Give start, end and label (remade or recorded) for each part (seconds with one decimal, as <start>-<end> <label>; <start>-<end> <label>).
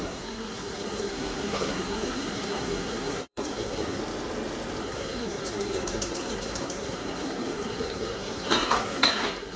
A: 0.0-4.0 remade; 4.0-4.8 recorded; 4.8-9.6 remade